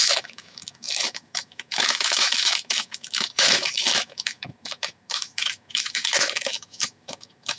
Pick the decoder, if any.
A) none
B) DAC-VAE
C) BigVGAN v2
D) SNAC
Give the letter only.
B